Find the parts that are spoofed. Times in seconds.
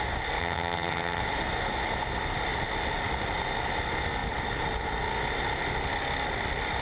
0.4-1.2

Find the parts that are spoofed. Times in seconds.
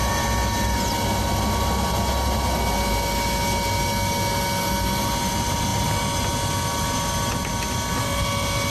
none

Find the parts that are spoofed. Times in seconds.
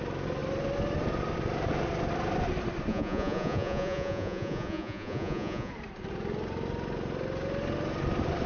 2.9-5.7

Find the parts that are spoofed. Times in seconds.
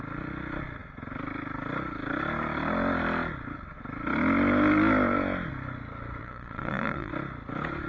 6.2-7.1